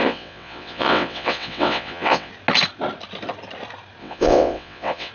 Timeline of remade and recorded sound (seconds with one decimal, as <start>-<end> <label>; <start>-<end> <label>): 0.0-2.3 remade; 2.3-4.0 recorded; 4.0-5.1 remade